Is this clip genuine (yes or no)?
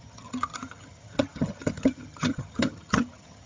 no